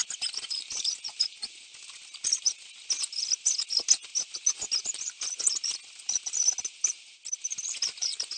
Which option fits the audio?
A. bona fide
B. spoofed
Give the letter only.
A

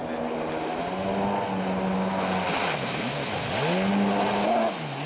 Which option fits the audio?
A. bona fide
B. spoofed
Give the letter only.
A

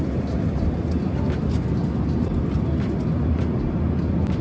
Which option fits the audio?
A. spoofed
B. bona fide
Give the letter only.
B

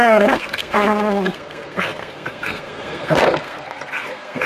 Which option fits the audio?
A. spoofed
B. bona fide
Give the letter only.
A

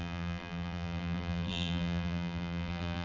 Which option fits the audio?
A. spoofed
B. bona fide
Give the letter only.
A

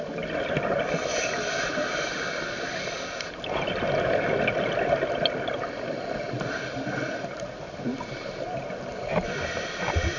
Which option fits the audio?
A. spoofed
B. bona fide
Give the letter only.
B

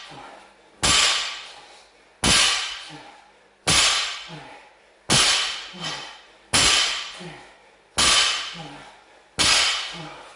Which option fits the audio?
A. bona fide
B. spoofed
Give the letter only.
A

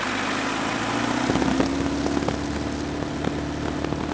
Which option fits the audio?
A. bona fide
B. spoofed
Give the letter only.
A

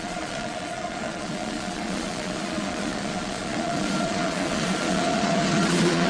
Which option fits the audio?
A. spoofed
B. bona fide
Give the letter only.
A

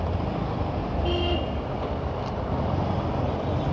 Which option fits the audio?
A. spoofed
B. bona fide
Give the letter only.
B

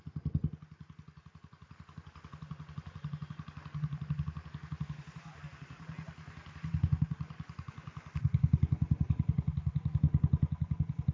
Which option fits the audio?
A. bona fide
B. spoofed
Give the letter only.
A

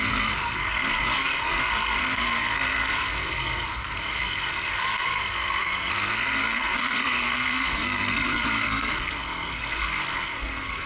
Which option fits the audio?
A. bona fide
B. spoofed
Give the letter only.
B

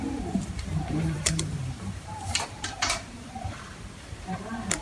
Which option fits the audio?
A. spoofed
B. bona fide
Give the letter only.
A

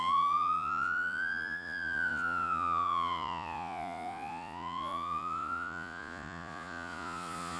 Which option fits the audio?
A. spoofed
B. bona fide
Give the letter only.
A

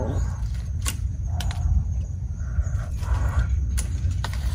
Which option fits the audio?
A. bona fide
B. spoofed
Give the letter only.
A